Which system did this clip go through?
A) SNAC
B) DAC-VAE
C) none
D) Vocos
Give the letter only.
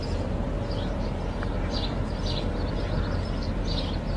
C